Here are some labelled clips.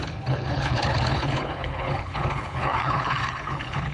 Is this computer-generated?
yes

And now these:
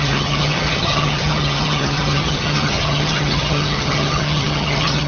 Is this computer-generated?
yes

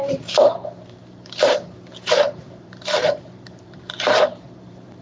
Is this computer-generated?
yes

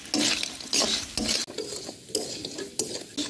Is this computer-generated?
no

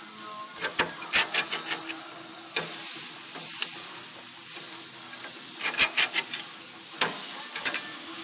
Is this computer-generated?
no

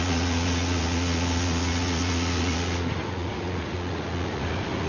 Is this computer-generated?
yes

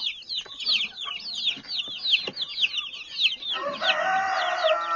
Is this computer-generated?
no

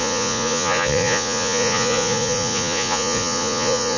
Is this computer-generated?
yes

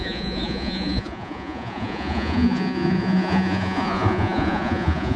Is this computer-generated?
yes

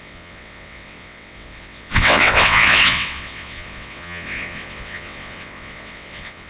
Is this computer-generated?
yes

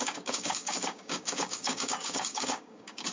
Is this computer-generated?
yes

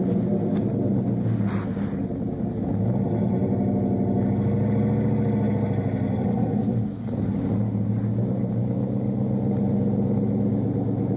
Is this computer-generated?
no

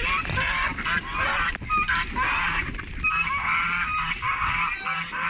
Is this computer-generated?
no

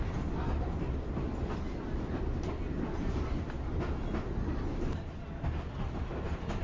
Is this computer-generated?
no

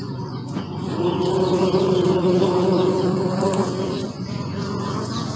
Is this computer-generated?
yes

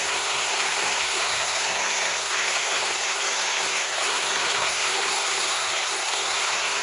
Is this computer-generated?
yes